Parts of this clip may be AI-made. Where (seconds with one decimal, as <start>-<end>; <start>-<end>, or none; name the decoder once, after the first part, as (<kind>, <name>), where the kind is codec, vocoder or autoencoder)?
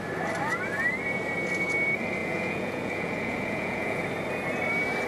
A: 2.2-4.0 (vocoder, Vocos)